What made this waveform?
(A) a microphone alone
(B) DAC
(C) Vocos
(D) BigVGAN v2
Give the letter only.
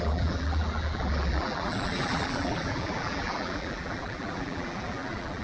D